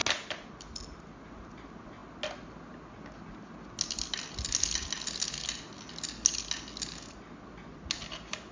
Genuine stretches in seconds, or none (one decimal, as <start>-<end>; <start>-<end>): 0.0-8.5

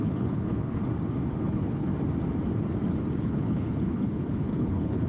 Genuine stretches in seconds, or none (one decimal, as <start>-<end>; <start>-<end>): 0.8-1.4; 1.9-3.2

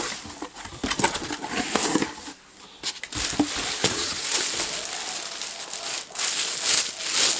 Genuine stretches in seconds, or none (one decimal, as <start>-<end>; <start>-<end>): 0.0-3.8; 4.4-7.4

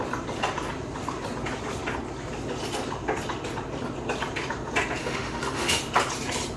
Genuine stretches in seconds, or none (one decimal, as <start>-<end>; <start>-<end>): 0.0-5.0; 5.8-6.6

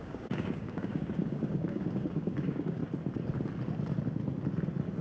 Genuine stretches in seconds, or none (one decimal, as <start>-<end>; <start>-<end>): 2.8-5.0

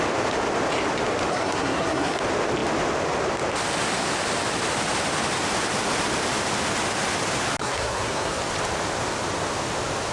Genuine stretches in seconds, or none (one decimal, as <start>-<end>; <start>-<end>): 0.0-1.3; 2.2-7.6; 8.4-10.1

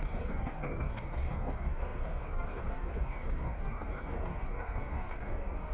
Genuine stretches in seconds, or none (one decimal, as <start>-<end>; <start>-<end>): none

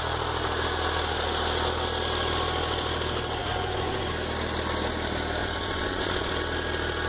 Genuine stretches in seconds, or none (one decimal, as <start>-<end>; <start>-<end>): 0.0-3.4; 4.1-5.4; 6.3-7.1